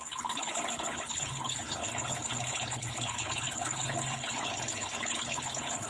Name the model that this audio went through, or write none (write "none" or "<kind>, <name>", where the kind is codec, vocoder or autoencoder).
codec, HILCodec